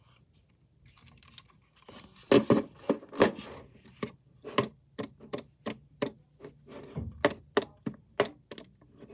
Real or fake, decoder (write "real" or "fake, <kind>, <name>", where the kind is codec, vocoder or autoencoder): real